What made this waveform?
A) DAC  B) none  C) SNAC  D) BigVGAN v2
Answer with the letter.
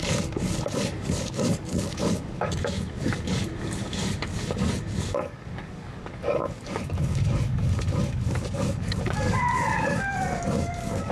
A